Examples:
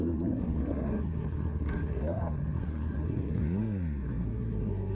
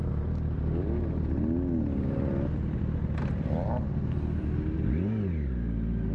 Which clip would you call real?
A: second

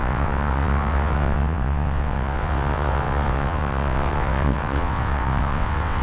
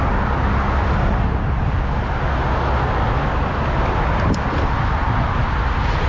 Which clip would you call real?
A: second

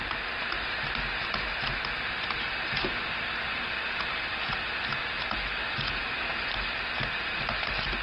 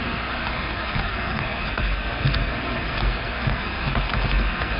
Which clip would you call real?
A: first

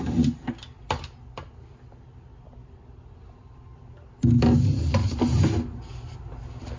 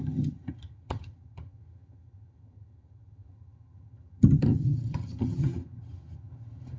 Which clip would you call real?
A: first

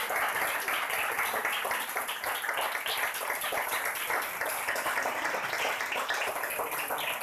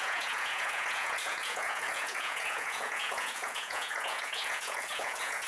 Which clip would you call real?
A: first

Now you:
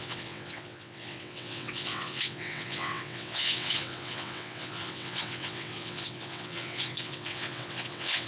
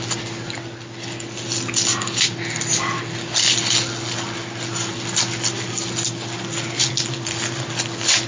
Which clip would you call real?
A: second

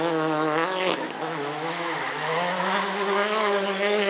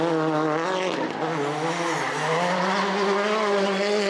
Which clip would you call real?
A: second